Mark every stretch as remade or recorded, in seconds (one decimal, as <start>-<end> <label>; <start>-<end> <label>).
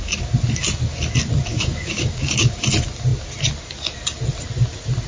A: 0.0-1.5 recorded; 1.5-2.6 remade; 2.6-5.1 recorded